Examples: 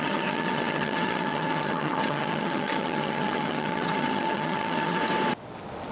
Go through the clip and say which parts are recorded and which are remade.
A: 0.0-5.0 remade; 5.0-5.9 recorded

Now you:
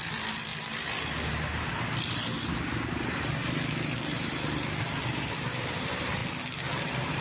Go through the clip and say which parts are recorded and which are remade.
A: 0.0-0.5 remade; 0.5-4.8 recorded; 4.8-6.2 remade; 6.2-6.8 recorded; 6.8-7.2 remade

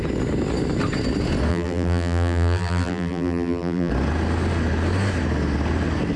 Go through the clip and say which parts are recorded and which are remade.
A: 0.0-1.5 recorded; 1.5-3.9 remade; 3.9-6.2 recorded

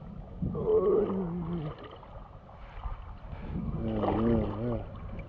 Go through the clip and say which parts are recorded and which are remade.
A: 0.0-5.3 recorded

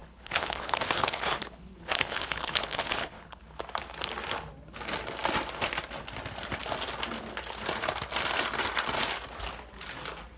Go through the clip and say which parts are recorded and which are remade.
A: 0.0-3.4 remade; 3.4-10.4 recorded

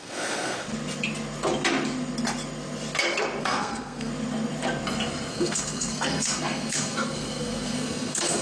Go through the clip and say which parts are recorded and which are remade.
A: 0.0-0.7 remade; 0.7-3.4 recorded; 3.4-4.1 remade; 4.1-5.3 recorded; 5.3-8.4 remade

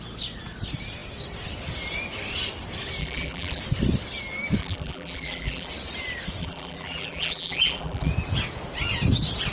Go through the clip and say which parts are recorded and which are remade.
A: 0.0-3.0 recorded; 3.0-3.6 remade; 3.6-4.6 recorded; 4.6-5.7 remade; 5.7-6.4 recorded; 6.4-8.1 remade; 8.1-9.5 recorded